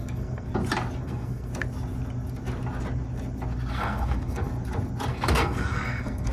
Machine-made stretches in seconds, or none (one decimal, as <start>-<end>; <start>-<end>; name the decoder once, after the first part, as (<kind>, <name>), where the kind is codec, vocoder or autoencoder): 0.0-0.5 (codec, SNAC); 1.0-1.5; 3.7-4.5; 5.1-6.3